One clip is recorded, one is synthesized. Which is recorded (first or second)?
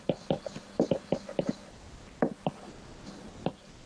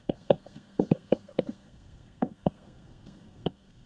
first